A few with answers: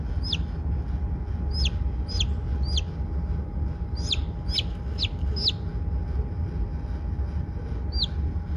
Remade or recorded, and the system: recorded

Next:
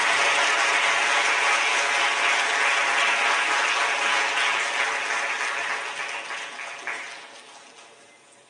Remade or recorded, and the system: recorded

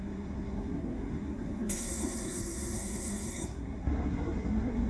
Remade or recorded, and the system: remade, codec, SNAC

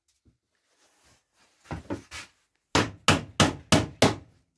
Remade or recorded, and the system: recorded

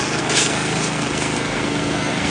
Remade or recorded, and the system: remade, codec, SNAC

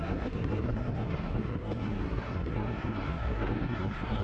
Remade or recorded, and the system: remade, codec, SNAC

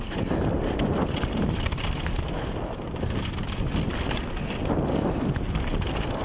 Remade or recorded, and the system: recorded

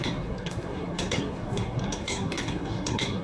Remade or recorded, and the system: remade, codec, SNAC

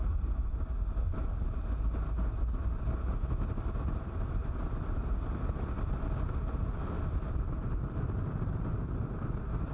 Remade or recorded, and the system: recorded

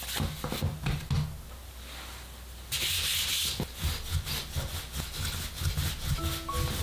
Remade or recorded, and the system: recorded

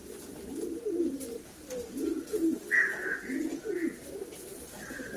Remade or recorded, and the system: recorded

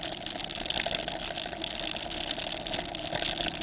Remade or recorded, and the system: recorded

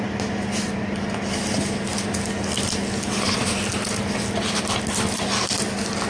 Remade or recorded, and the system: recorded